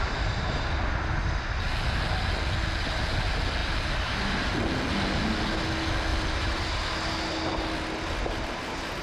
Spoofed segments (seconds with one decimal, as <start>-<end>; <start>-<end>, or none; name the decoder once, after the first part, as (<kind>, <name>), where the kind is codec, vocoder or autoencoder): 3.6-4.5 (vocoder, BigVGAN v2); 6.1-6.8